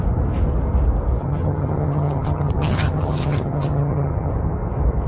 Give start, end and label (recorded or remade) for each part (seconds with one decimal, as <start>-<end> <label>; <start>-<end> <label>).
0.0-1.2 recorded; 1.2-4.3 remade; 4.3-5.1 recorded